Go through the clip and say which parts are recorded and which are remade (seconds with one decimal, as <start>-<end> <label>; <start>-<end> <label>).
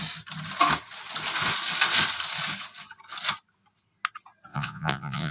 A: 0.0-4.5 recorded; 4.5-5.3 remade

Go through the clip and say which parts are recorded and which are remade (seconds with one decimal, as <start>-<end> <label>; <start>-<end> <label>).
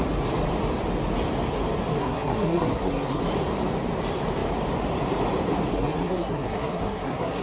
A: 0.0-2.0 recorded; 2.0-3.2 remade; 3.2-5.7 recorded; 5.7-7.4 remade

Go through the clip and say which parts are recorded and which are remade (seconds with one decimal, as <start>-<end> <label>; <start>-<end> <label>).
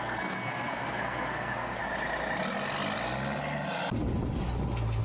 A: 0.0-1.8 remade; 1.8-5.0 recorded